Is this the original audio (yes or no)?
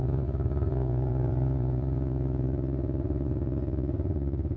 no